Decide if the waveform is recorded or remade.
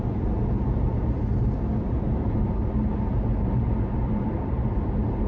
recorded